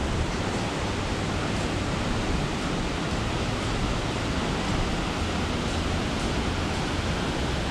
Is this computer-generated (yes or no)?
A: no